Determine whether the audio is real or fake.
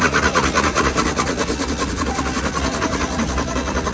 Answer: fake